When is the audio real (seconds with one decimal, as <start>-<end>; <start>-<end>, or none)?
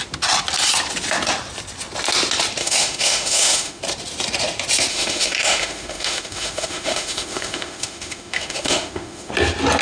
0.0-2.6; 3.8-4.9; 9.3-9.8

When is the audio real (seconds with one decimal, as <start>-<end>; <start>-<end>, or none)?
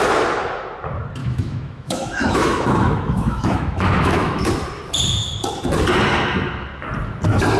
0.0-1.2; 4.5-7.6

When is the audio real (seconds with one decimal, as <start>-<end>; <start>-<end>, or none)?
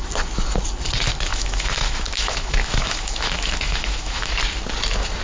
0.0-1.3; 4.4-5.2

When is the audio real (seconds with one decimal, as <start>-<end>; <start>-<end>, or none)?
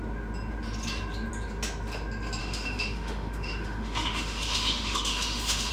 0.0-2.4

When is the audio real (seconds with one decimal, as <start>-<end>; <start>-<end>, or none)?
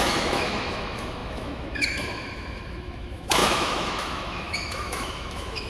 none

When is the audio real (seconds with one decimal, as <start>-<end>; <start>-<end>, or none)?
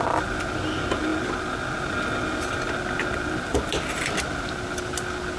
0.0-5.4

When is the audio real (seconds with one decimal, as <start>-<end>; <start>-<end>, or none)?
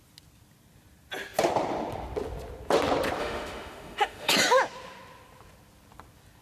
0.0-3.2; 4.3-6.4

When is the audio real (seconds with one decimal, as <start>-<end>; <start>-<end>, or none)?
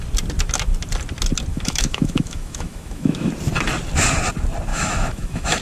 0.0-1.5; 3.3-4.7